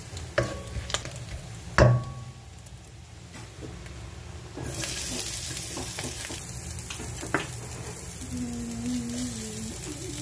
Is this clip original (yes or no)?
yes